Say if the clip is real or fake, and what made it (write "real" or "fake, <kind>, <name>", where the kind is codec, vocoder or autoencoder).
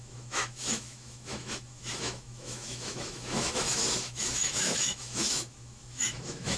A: fake, autoencoder, DAC-VAE